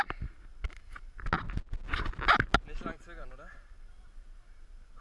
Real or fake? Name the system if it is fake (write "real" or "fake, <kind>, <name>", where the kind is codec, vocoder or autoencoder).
real